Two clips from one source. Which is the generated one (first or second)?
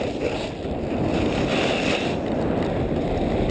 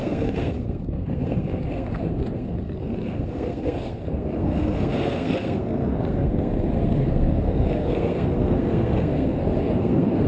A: second